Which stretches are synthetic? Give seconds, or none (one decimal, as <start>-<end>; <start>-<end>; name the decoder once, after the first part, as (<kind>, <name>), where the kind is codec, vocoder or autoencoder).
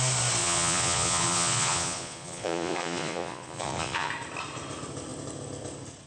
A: 0.4-4.1 (vocoder, Vocos)